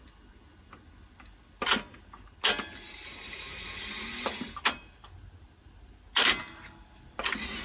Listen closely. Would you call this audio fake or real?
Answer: real